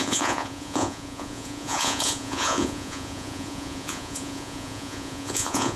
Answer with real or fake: fake